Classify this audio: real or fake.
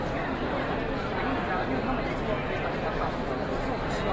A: real